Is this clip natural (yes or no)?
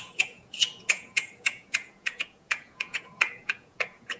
no